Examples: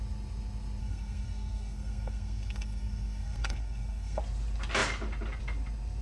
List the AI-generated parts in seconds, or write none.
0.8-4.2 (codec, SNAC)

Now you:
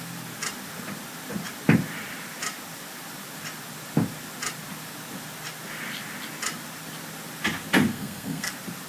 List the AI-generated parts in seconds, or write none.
7.9-8.5 (codec, SNAC)

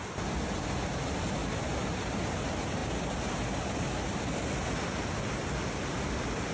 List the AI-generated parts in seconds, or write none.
none